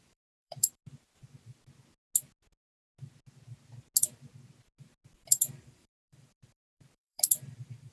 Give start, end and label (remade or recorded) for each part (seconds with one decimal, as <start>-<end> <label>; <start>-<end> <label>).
0.0-0.8 remade; 0.8-5.1 recorded; 5.1-7.9 remade